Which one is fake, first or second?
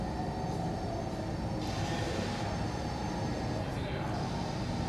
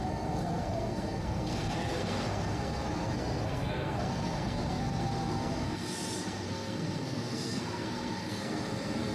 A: second